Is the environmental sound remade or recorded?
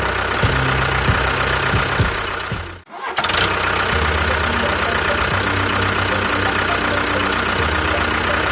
recorded